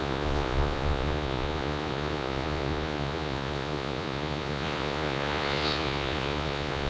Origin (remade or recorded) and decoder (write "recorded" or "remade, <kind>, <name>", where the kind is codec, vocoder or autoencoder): remade, vocoder, Vocos